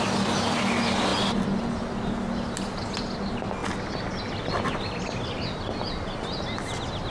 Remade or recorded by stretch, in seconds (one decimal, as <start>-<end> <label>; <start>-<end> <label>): 0.0-7.1 recorded